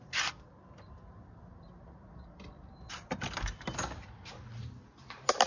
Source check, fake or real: real